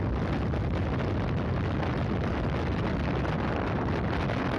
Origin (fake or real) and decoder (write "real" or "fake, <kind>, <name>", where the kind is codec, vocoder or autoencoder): real